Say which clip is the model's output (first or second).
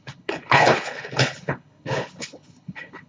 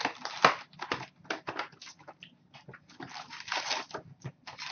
first